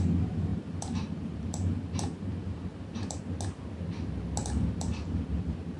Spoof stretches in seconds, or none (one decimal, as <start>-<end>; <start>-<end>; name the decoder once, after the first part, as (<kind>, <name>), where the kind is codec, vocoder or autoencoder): 0.5-3.2 (vocoder, BigVGAN v2); 4.4-5.8